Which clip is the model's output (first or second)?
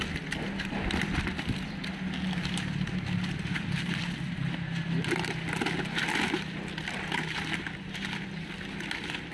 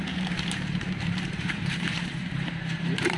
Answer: second